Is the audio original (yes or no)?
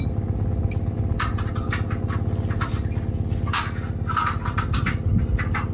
yes